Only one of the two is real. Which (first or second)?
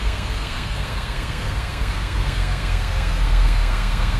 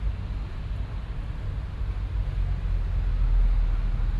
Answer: second